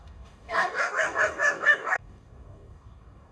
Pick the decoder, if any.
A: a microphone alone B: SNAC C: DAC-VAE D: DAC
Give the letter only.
D